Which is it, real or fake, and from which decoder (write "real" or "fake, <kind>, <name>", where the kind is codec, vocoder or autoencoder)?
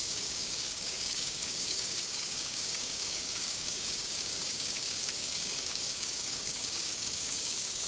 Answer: fake, codec, DAC